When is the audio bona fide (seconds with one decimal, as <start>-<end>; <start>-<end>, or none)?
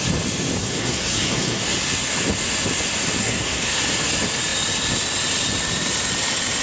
0.0-0.6; 1.6-3.2; 3.8-6.6